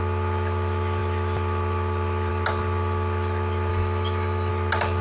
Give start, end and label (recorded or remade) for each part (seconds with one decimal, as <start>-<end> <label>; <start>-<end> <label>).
0.0-3.7 recorded; 3.7-4.5 remade; 4.5-5.0 recorded